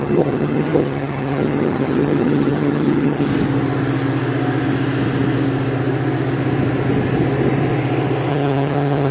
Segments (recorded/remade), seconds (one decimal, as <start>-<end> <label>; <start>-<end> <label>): 0.0-3.3 remade; 3.3-8.3 recorded; 8.3-9.1 remade